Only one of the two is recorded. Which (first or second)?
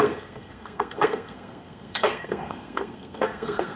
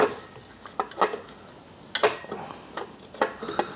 second